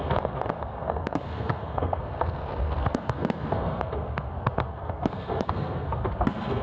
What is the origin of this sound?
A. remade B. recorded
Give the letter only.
A